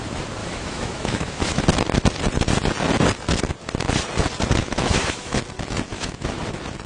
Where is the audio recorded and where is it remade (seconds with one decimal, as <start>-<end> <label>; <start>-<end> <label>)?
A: 0.0-0.4 recorded; 0.4-1.6 remade; 1.6-4.6 recorded; 4.6-5.4 remade; 5.4-5.9 recorded; 5.9-6.4 remade; 6.4-6.9 recorded